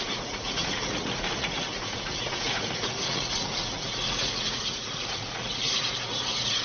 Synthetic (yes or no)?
yes